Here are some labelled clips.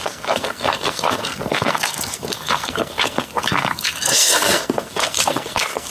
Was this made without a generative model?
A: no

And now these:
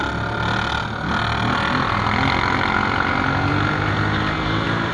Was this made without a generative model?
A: yes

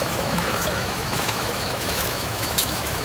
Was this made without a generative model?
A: no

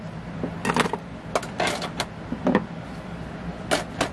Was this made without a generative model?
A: yes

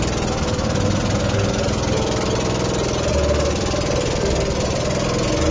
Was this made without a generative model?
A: yes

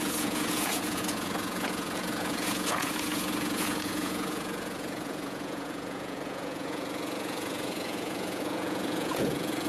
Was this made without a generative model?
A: no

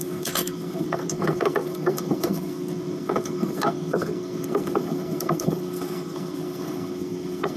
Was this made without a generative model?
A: no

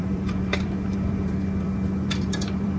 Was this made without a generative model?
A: no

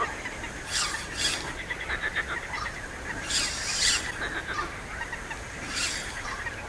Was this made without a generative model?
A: yes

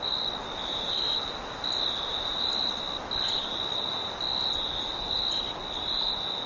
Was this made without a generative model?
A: yes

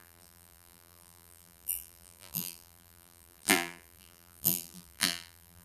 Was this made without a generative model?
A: no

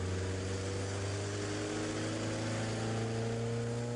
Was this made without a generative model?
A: yes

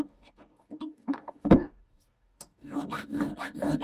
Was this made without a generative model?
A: no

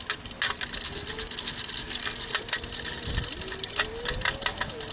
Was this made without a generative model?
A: yes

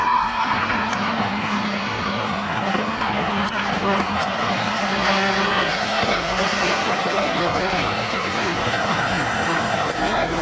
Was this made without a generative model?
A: no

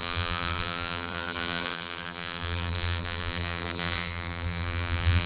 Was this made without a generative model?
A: no